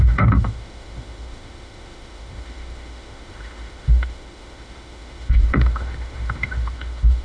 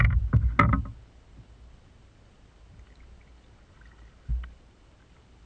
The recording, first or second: second